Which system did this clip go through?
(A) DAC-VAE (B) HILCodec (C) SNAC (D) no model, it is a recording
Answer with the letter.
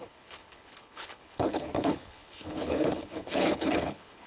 B